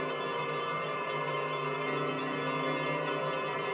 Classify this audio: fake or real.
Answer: real